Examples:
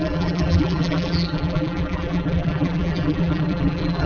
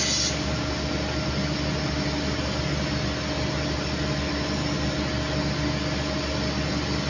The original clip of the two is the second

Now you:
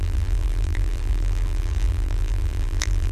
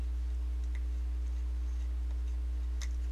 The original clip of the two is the second